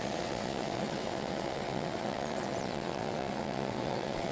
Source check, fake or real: fake